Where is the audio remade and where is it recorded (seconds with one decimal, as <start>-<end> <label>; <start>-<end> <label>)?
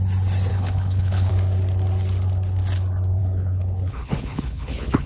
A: 0.0-0.5 recorded; 0.5-1.3 remade; 1.3-3.2 recorded; 3.2-5.1 remade